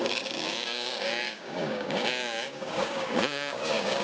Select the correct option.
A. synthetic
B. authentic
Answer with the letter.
A